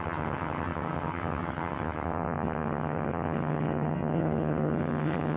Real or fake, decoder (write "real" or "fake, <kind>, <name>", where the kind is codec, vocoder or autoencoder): fake, vocoder, HiFi-GAN